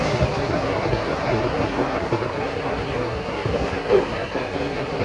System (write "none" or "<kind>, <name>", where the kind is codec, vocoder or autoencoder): codec, SNAC